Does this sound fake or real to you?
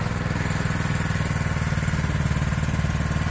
real